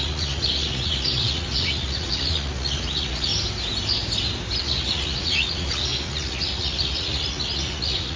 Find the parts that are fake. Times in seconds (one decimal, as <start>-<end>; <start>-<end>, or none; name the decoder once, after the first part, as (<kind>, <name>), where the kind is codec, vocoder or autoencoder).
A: 0.0-3.3 (vocoder, Vocos); 4.6-8.2